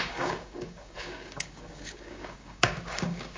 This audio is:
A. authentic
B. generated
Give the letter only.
B